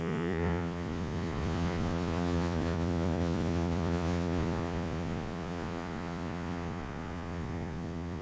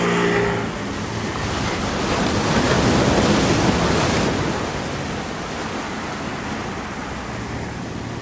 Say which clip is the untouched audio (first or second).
second